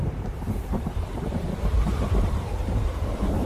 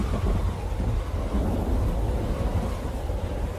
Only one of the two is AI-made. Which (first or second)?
first